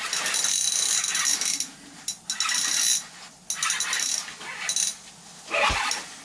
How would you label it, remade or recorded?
recorded